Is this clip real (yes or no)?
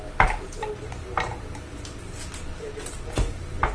yes